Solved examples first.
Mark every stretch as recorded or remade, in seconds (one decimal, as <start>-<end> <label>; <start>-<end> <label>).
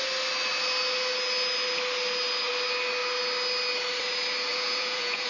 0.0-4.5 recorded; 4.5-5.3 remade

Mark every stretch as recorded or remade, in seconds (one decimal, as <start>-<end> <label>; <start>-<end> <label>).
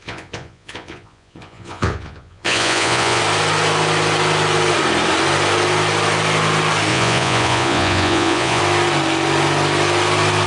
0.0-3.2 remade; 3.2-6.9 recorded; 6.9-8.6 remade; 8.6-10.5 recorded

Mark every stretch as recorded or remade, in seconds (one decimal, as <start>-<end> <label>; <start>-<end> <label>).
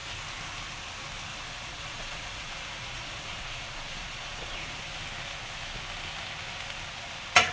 0.0-1.3 recorded; 1.3-4.8 remade; 4.8-7.5 recorded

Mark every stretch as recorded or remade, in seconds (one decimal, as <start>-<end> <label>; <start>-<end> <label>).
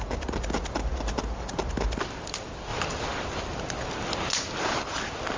0.0-5.4 recorded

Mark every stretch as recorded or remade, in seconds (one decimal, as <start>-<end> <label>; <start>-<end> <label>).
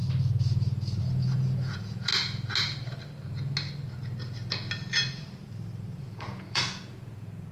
0.0-1.0 recorded; 1.0-2.1 remade; 2.1-6.0 recorded; 6.0-7.5 remade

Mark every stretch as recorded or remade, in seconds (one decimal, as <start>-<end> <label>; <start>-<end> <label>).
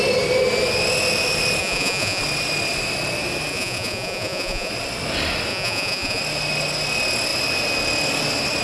0.0-1.6 recorded; 1.6-2.2 remade; 2.2-3.5 recorded; 3.5-4.7 remade; 4.7-5.5 recorded; 5.5-6.2 remade; 6.2-8.6 recorded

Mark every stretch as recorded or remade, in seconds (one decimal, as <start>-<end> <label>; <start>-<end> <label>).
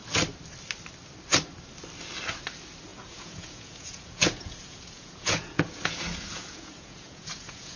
0.0-2.9 recorded; 2.9-7.8 remade